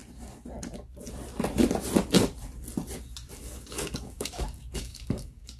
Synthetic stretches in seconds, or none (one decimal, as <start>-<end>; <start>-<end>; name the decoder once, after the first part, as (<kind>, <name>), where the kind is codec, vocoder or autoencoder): 3.4-5.6 (codec, DAC)